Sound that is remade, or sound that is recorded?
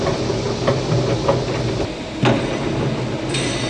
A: recorded